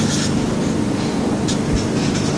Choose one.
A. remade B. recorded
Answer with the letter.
B